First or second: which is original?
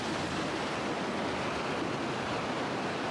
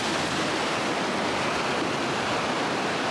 first